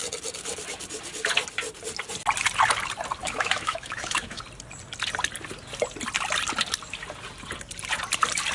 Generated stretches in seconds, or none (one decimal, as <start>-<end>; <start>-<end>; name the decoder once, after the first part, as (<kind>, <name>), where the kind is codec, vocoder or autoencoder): 3.2-4.4 (autoencoder, DAC-VAE)